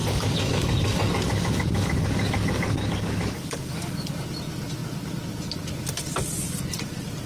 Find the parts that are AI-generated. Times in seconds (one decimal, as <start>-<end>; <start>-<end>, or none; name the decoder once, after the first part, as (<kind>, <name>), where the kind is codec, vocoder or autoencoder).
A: 0.0-3.7 (codec, DAC)